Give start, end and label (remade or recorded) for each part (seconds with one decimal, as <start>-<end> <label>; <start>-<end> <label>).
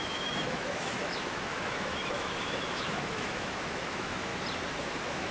0.0-4.3 remade; 4.3-4.8 recorded; 4.8-5.3 remade